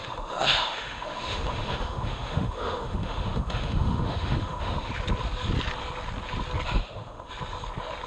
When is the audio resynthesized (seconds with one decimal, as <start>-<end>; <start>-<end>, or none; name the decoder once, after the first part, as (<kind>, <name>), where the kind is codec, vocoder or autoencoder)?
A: 0.0-4.9 (autoencoder, DAC-VAE); 6.8-7.3